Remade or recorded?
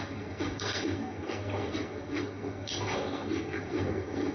remade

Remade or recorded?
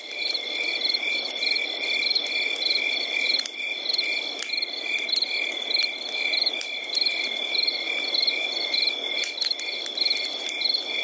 recorded